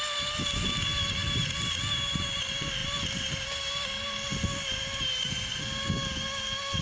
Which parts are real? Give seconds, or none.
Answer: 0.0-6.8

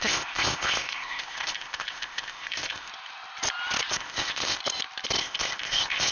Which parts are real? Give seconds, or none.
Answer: 2.9-3.9; 4.6-5.2

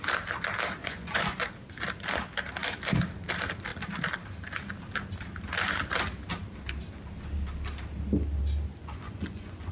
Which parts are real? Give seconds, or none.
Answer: 0.0-0.8; 1.5-8.8

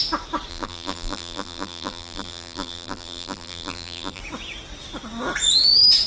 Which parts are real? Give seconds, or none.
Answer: 0.0-0.5; 4.2-6.1

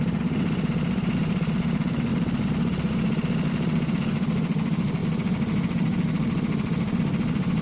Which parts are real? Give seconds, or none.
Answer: 0.0-7.6